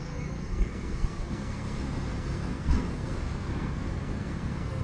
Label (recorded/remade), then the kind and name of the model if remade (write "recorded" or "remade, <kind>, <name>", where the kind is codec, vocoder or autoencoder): remade, codec, SNAC